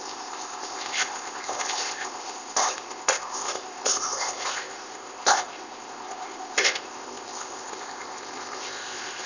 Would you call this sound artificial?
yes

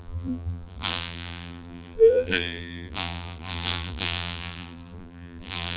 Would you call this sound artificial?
yes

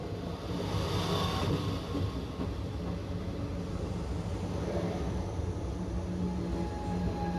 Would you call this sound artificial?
no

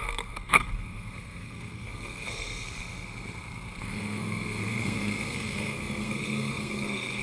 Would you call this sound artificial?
yes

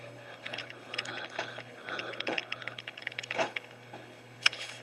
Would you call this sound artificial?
yes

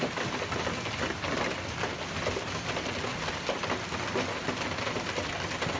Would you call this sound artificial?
no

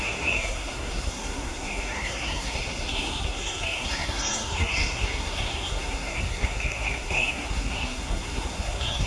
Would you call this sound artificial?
yes